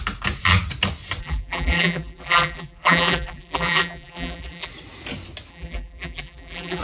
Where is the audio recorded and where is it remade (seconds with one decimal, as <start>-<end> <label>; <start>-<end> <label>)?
0.0-1.2 recorded; 1.2-4.7 remade; 4.7-5.5 recorded; 5.5-6.8 remade